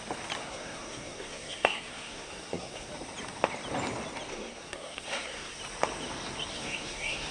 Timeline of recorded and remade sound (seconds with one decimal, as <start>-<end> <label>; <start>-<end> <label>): 0.0-0.4 recorded; 0.4-2.9 remade; 2.9-4.3 recorded; 4.3-5.6 remade; 5.6-6.5 recorded; 6.5-7.3 remade